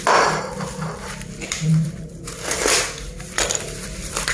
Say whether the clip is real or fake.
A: fake